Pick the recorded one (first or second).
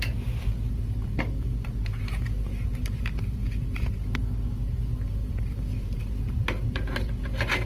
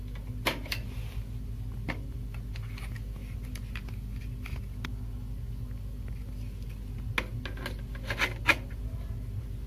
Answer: second